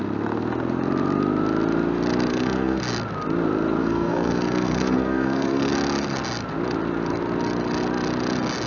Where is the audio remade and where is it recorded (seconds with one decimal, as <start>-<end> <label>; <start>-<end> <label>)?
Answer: 0.0-2.3 recorded; 2.3-2.8 remade; 2.8-3.8 recorded; 3.8-5.7 remade; 5.7-8.7 recorded

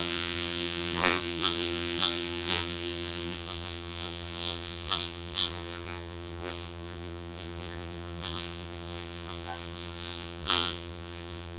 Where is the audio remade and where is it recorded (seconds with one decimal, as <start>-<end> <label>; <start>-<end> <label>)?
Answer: 0.0-11.6 remade